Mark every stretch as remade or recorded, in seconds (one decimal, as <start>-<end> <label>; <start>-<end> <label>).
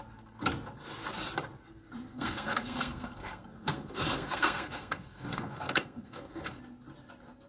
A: 0.0-2.1 recorded; 2.1-6.6 remade; 6.6-7.5 recorded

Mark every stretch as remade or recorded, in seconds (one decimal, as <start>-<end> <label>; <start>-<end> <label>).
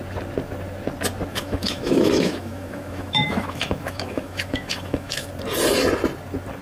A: 0.0-1.3 recorded; 1.3-5.3 remade; 5.3-6.6 recorded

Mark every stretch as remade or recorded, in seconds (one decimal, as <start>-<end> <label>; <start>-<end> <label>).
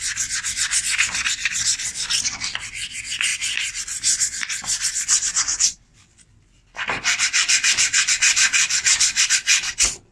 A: 0.0-3.3 recorded; 3.3-3.8 remade; 3.8-5.5 recorded; 5.5-9.2 remade; 9.2-10.1 recorded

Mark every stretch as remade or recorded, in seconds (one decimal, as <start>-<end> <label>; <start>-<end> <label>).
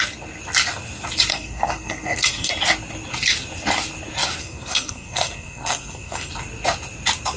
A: 0.0-1.3 recorded; 1.3-2.5 remade; 2.5-4.4 recorded; 4.4-6.3 remade; 6.3-7.4 recorded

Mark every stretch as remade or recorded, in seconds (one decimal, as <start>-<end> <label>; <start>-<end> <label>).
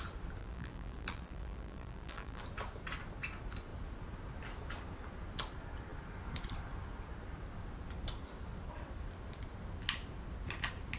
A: 0.0-0.4 recorded; 0.4-2.4 remade; 2.4-11.0 recorded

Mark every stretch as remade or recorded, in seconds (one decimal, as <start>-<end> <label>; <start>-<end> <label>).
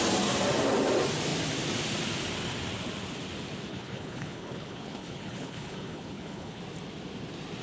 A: 0.0-3.7 recorded; 3.7-6.6 remade; 6.6-7.6 recorded